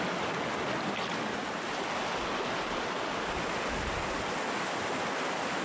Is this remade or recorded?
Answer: recorded